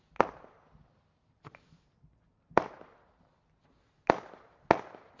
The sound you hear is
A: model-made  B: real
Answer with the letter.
B